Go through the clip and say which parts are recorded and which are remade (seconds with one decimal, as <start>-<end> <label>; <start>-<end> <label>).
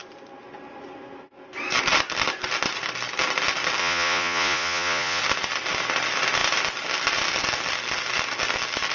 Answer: 0.0-3.8 recorded; 3.8-5.2 remade; 5.2-8.9 recorded